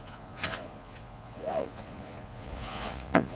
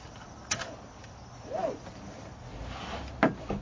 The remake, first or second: first